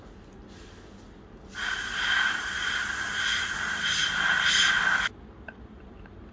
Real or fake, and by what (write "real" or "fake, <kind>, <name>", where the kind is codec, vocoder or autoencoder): real